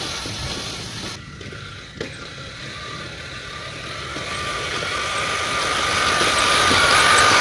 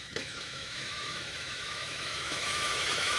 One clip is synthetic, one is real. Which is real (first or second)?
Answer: first